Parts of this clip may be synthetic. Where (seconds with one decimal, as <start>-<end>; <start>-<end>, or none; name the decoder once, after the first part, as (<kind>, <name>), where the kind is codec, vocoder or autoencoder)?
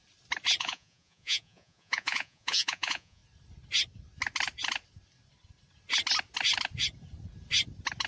0.6-3.2 (vocoder, Vocos)